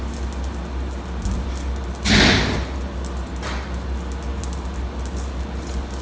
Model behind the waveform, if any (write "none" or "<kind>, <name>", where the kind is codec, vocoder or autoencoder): none